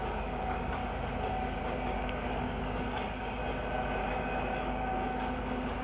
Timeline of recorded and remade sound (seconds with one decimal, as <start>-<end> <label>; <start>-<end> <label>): 0.0-0.8 remade; 0.8-1.6 recorded; 1.6-3.4 remade; 3.4-4.0 recorded; 4.0-5.8 remade